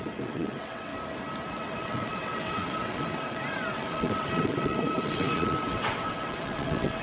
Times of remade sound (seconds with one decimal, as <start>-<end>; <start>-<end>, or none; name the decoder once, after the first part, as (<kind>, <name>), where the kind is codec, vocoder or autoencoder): 0.0-0.9 (vocoder, WaveNeXt); 1.5-7.0